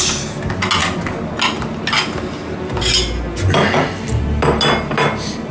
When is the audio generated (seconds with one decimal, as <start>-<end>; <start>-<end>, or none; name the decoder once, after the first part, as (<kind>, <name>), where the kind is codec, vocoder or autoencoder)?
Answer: none